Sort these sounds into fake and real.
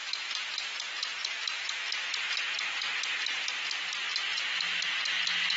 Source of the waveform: real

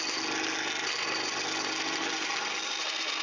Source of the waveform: real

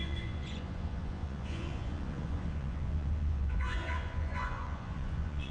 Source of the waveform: fake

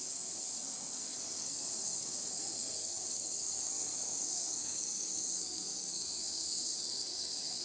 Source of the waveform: fake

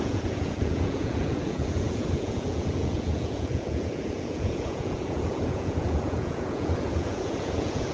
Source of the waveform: fake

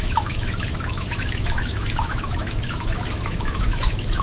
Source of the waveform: fake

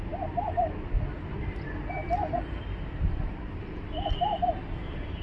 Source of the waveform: real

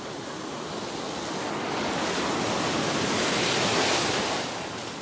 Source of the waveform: real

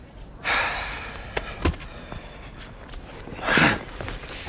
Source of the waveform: real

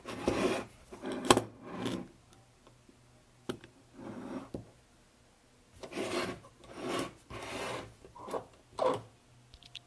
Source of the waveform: real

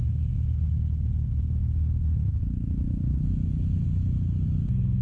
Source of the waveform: real